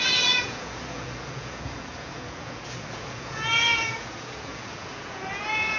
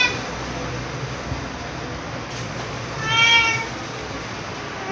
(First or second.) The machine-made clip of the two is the first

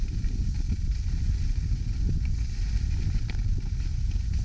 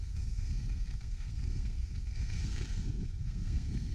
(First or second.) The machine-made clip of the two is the second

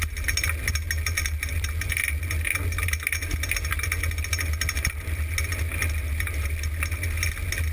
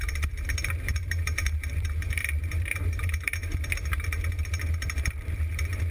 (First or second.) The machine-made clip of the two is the second